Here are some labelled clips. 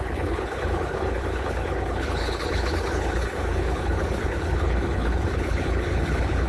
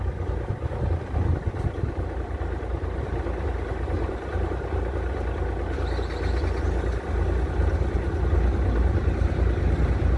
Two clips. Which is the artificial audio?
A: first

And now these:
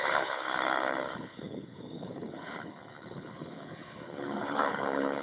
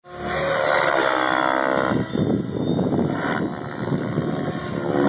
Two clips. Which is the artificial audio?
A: first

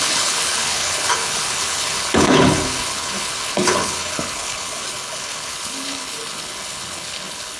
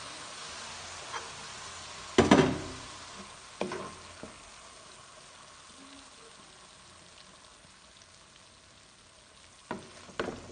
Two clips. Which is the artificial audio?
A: first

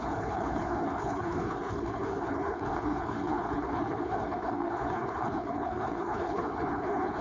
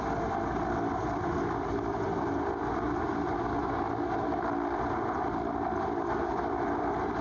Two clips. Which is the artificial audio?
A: first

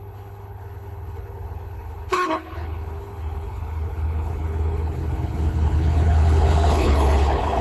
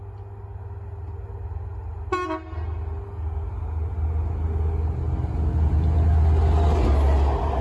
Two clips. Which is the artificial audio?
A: first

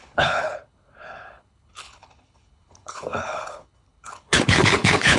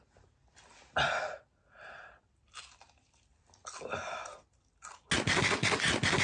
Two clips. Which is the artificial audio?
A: first